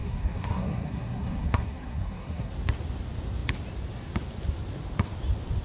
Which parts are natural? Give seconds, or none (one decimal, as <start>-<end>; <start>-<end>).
2.5-5.6